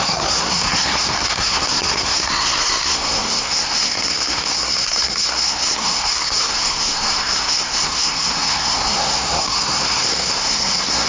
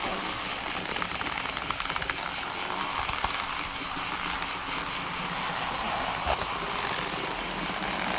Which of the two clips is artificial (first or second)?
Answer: first